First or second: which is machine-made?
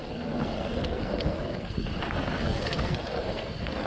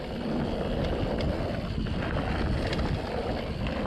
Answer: first